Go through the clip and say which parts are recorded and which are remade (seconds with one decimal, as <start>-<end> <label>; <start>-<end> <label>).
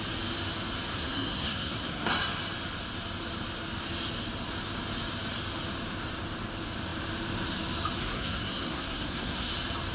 0.0-0.9 recorded; 0.9-2.1 remade; 2.1-8.0 recorded; 8.0-9.5 remade; 9.5-9.9 recorded